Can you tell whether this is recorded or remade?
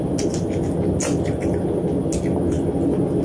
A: recorded